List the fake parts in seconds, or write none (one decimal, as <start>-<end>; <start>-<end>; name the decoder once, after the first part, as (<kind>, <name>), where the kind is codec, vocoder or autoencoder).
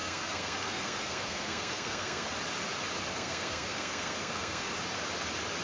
0.0-2.3 (codec, SNAC); 3.1-4.7